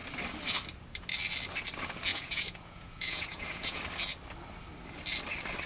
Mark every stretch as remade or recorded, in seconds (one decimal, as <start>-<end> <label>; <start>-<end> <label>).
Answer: 0.0-2.1 recorded; 2.1-3.8 remade; 3.8-5.7 recorded